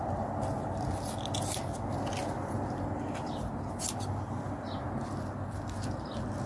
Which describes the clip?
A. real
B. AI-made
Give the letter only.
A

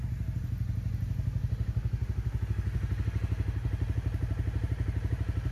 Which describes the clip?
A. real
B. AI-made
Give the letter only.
A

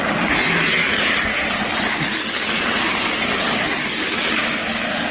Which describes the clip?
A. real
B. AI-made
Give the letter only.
A